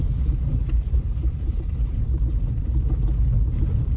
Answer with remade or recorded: remade